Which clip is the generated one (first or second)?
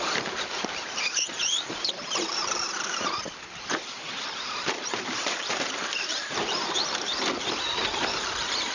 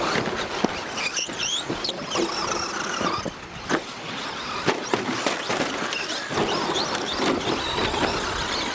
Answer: first